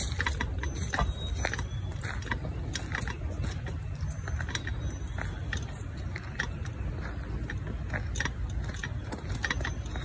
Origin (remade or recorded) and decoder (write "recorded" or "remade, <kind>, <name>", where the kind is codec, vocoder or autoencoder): recorded